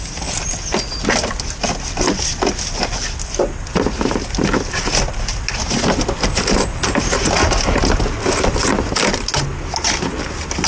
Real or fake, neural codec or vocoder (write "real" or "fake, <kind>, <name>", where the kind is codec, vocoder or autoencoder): real